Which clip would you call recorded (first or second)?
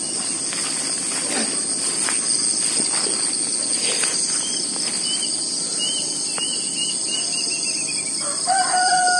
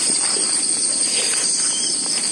first